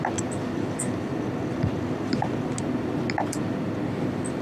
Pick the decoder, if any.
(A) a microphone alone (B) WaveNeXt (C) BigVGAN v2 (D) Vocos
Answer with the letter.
A